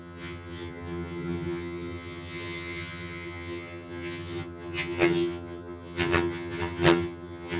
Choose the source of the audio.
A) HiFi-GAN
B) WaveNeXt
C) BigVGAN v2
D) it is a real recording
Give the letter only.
A